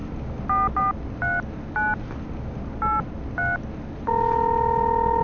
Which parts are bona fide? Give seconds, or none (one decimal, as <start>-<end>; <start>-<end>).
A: 0.0-5.2